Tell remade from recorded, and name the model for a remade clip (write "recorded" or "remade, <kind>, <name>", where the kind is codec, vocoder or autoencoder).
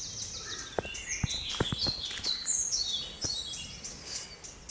recorded